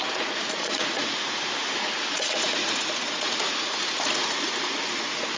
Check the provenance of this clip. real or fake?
fake